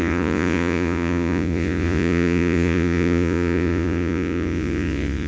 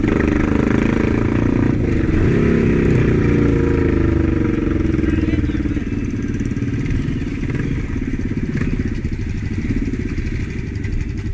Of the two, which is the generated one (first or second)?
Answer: first